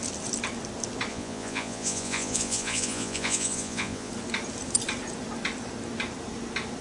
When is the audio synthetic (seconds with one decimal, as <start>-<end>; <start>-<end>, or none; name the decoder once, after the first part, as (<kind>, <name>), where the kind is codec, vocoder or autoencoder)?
1.1-4.1 (vocoder, Vocos)